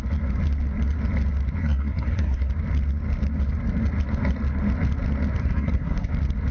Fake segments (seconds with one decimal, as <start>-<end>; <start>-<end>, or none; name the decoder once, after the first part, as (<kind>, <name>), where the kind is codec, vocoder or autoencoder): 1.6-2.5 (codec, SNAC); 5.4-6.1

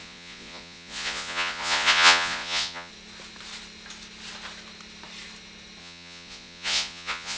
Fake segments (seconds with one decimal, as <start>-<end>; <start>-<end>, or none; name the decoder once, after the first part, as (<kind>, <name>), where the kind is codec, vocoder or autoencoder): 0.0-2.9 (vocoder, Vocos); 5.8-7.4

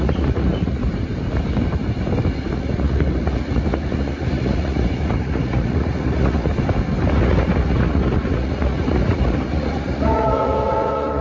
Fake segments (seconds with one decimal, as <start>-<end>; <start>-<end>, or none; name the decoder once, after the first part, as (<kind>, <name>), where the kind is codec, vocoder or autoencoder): 0.0-0.8 (vocoder, Vocos); 2.5-6.5; 7.1-11.2

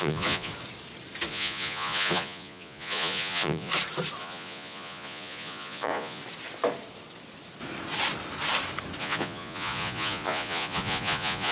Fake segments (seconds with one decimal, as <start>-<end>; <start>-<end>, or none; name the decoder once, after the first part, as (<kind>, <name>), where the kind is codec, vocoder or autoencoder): 0.0-0.5 (vocoder, Vocos); 1.3-3.7; 4.2-6.2; 9.0-11.5